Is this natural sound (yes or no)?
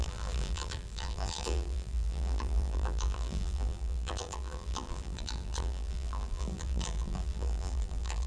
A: no